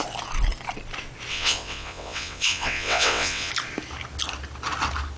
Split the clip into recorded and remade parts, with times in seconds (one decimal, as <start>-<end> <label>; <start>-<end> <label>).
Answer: 0.0-1.3 recorded; 1.3-3.5 remade; 3.5-5.2 recorded